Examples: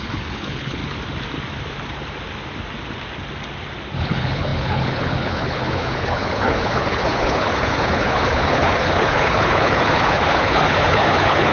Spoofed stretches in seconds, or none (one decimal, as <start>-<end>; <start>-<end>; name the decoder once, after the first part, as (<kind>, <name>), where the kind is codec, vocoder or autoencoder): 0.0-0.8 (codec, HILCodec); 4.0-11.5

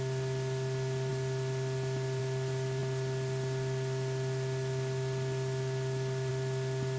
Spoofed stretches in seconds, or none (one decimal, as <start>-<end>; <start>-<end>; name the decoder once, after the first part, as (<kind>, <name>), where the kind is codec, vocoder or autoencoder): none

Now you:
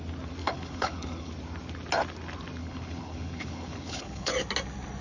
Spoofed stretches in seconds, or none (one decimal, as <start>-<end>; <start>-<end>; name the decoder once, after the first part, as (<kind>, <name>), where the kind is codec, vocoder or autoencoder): 0.4-1.3 (codec, HILCodec); 2.6-4.3

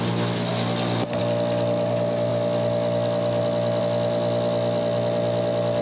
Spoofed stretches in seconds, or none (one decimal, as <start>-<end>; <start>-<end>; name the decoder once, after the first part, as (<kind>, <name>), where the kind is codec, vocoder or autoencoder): none